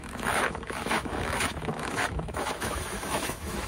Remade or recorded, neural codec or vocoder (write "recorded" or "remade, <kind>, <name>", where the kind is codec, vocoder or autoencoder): remade, autoencoder, DAC-VAE